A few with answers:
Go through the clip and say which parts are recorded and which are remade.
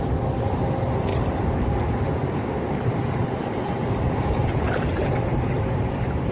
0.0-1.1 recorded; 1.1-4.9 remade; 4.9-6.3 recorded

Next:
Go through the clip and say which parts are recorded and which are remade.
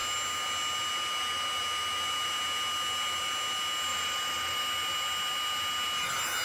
0.0-3.9 recorded; 3.9-4.6 remade; 4.6-6.4 recorded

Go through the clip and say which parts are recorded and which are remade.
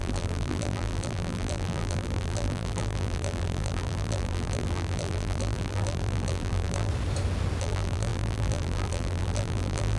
0.0-6.9 remade; 6.9-7.6 recorded; 7.6-10.0 remade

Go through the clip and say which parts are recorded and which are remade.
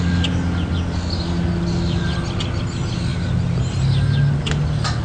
0.0-5.0 recorded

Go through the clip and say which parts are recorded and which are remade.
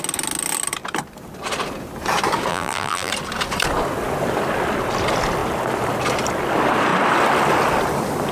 0.0-2.5 recorded; 2.5-3.1 remade; 3.1-8.3 recorded